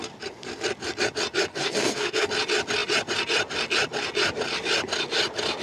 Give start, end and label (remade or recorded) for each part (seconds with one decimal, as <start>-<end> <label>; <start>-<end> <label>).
0.0-1.5 recorded; 1.5-2.3 remade; 2.3-5.6 recorded